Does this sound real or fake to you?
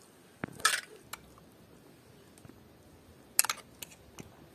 real